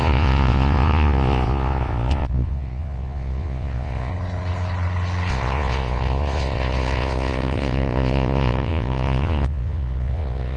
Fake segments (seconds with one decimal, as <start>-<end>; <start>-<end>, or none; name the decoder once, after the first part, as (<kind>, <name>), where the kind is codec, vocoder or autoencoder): 0.0-4.1 (vocoder, Vocos); 5.3-10.6